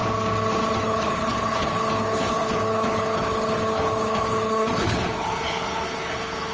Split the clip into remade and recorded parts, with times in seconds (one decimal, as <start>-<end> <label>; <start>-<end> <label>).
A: 0.0-0.8 recorded; 0.8-6.5 remade

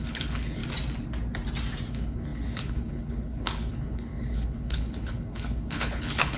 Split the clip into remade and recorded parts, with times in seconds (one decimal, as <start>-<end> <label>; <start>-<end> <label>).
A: 0.0-0.6 remade; 0.6-1.9 recorded; 1.9-6.4 remade

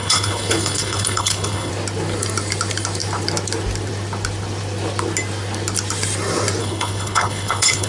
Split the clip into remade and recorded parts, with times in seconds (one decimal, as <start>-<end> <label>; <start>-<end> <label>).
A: 0.0-1.7 remade; 1.7-6.6 recorded; 6.6-7.9 remade

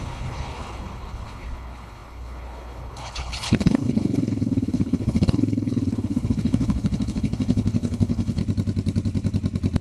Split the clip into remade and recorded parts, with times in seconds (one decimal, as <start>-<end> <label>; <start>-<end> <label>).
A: 0.0-8.4 remade; 8.4-9.8 recorded

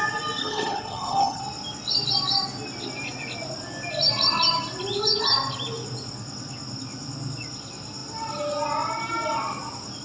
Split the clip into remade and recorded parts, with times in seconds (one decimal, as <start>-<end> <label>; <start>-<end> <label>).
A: 0.0-0.4 recorded; 0.4-1.4 remade; 1.4-10.0 recorded

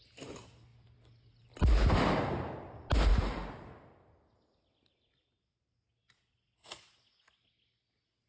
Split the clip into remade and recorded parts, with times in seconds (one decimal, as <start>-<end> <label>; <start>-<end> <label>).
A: 0.0-8.3 recorded